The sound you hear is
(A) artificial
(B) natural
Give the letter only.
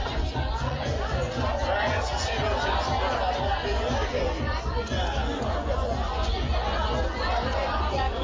A